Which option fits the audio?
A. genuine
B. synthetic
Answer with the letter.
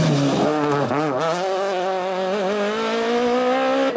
A